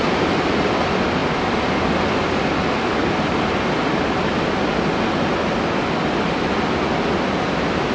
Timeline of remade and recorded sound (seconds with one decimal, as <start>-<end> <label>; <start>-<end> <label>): 0.0-7.9 recorded